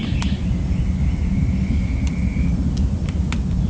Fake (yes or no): no